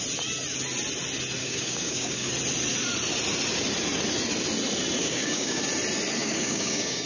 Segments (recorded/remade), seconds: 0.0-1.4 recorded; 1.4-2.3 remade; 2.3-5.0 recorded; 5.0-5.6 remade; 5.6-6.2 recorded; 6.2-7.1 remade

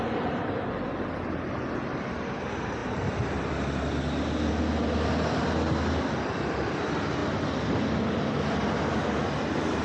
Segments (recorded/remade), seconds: 0.0-9.8 recorded